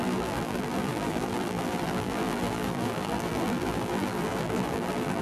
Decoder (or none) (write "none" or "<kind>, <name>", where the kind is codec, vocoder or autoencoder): vocoder, BigVGAN v2